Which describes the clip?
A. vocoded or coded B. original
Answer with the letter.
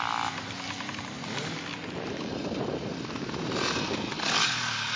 B